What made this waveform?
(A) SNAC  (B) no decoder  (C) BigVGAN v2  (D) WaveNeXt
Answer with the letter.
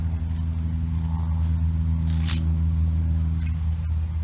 B